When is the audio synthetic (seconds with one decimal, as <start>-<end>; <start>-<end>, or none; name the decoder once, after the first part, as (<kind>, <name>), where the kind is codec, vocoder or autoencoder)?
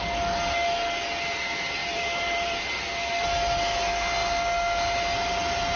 1.8-2.7 (vocoder, BigVGAN v2)